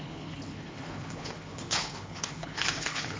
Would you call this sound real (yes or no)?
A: no